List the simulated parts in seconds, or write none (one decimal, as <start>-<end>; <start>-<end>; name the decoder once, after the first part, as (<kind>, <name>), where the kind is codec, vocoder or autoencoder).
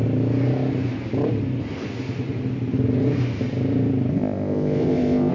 4.1-5.3 (codec, ZipCodec)